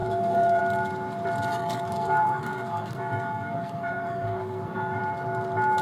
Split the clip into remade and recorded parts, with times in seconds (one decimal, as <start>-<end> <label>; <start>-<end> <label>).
0.0-0.6 remade; 0.6-1.5 recorded; 1.5-5.0 remade; 5.0-5.8 recorded